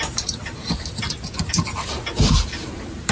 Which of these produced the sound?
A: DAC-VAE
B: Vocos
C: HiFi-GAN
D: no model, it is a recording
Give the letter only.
D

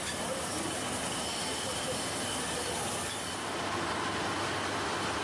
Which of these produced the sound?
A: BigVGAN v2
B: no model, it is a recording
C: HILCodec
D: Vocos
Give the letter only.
B